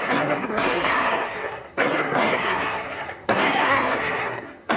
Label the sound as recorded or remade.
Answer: remade